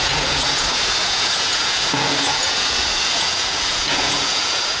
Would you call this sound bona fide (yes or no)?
no